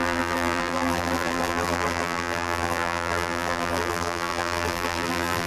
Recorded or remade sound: remade